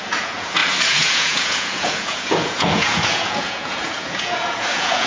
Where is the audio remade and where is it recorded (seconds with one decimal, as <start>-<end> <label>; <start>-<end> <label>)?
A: 0.0-5.1 remade